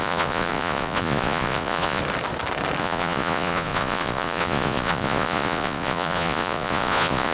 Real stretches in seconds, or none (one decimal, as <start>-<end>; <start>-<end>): 2.0-2.8